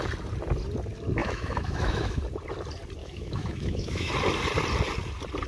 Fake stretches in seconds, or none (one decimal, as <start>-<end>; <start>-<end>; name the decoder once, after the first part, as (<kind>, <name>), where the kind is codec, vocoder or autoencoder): 1.2-2.2 (autoencoder, DAC-VAE); 3.0-4.1